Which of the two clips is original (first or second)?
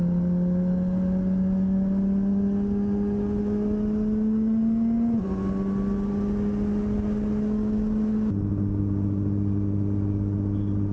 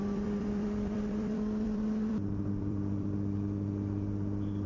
first